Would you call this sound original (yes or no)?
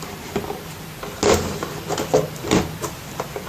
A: yes